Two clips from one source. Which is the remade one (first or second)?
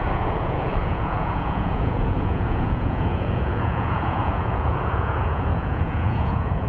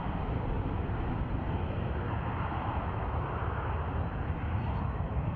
first